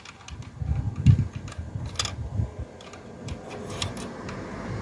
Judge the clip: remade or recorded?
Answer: recorded